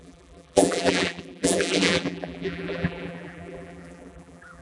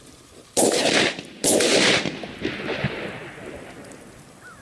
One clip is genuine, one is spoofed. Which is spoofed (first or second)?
first